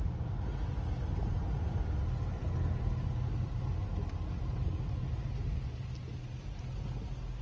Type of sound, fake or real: real